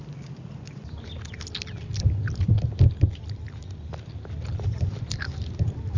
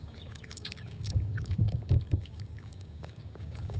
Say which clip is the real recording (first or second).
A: first